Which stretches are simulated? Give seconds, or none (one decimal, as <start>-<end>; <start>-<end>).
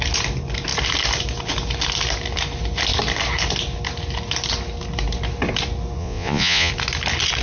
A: 6.0-6.7